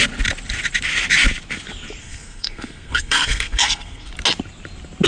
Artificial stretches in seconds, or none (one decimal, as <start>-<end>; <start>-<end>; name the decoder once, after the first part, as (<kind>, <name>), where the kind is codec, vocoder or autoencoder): 2.0-4.1 (codec, SNAC)